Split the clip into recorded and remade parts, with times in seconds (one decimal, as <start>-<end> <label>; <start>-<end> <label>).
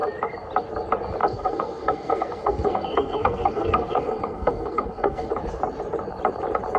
0.0-1.2 recorded; 1.2-5.3 remade; 5.3-6.8 recorded